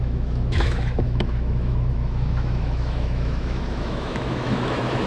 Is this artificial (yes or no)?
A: yes